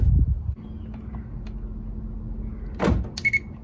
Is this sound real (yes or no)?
yes